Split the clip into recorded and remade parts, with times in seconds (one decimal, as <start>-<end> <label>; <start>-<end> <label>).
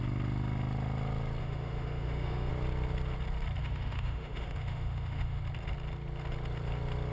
0.0-1.4 recorded; 1.4-2.5 remade; 2.5-3.6 recorded; 3.6-5.4 remade; 5.4-7.1 recorded